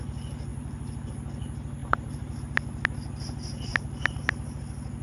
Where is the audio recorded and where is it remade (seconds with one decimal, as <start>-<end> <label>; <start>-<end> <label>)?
0.0-0.5 recorded; 0.5-1.1 remade; 1.1-1.8 recorded; 1.8-2.4 remade; 2.4-3.7 recorded; 3.7-4.6 remade; 4.6-5.0 recorded